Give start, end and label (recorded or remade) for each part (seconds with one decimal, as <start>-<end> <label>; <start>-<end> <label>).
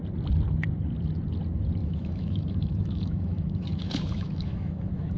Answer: 0.0-1.8 recorded; 1.8-5.2 remade